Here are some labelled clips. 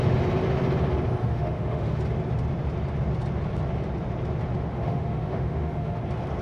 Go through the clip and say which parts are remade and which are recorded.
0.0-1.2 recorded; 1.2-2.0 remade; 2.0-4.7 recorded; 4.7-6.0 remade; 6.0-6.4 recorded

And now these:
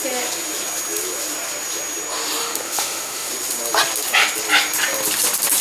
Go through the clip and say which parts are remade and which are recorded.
0.0-2.4 recorded; 2.4-3.3 remade; 3.3-5.6 recorded

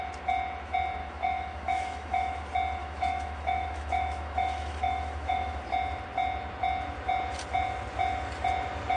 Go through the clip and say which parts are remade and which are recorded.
0.0-1.0 recorded; 1.0-2.4 remade; 2.4-2.8 recorded; 2.8-5.6 remade; 5.6-9.0 recorded

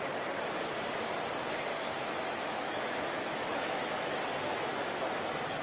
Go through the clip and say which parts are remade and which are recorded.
0.0-1.7 recorded; 1.7-4.2 remade; 4.2-5.6 recorded